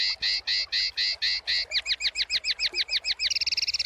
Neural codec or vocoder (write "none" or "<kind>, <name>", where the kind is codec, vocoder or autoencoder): none